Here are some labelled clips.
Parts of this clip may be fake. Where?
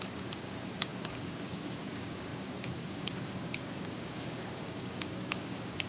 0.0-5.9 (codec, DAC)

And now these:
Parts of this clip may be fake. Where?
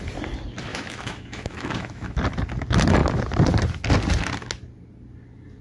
0.7-2.2 (autoencoder, DAC-VAE)